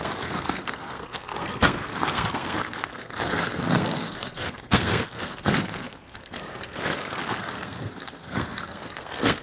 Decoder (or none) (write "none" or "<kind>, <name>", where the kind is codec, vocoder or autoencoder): codec, SNAC